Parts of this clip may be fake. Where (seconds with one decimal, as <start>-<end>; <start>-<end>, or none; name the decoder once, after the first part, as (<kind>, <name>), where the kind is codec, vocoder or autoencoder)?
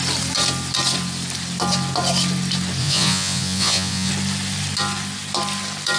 2.8-4.1 (vocoder, Vocos)